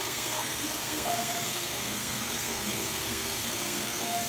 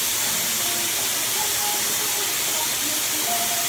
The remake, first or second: first